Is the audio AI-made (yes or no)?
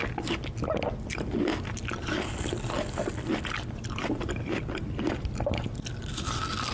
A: no